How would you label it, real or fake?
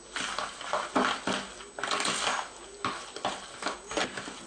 real